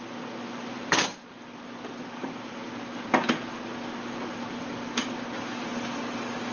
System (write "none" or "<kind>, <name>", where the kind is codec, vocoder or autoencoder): none